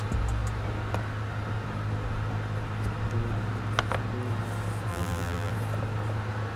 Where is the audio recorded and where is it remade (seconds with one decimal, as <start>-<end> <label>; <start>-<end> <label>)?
0.0-4.9 recorded; 4.9-5.5 remade; 5.5-6.6 recorded